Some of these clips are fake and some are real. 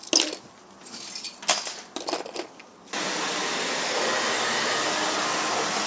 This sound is real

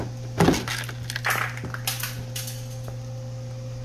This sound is real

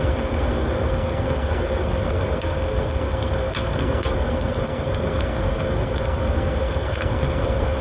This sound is fake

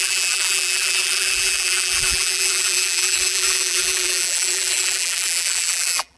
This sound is fake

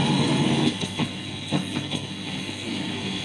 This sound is fake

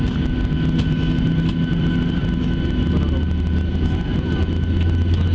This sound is real